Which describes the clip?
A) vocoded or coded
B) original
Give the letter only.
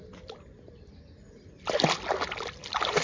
B